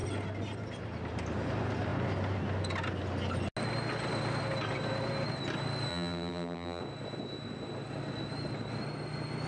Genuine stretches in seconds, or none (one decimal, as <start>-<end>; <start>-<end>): 0.0-5.9; 6.8-9.5